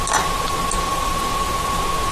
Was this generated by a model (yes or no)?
no